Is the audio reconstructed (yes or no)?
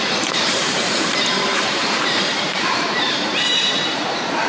yes